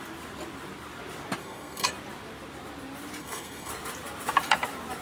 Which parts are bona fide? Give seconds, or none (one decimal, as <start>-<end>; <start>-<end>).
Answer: 0.0-1.4; 1.9-3.2; 3.7-5.0